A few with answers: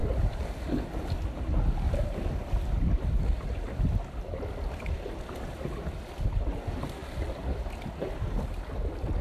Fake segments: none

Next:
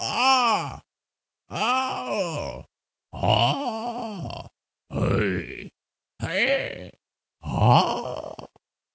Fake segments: none

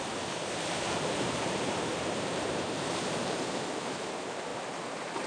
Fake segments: 0.0-4.5 (vocoder, BigVGAN v2)

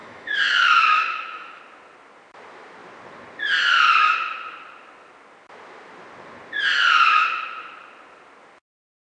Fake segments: 0.0-1.6 (autoencoder, DAC-VAE)

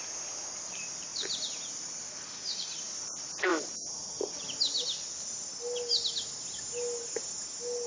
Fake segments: 1.1-2.8 (vocoder, BigVGAN v2)

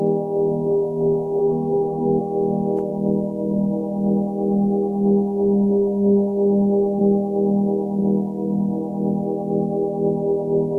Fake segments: 1.4-2.2 (codec, SNAC)

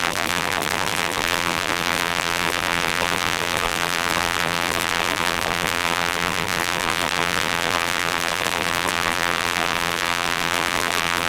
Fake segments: 0.0-11.3 (vocoder, BigVGAN v2)

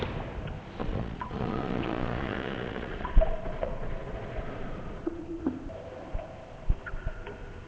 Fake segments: 0.8-5.4 (vocoder, Vocos)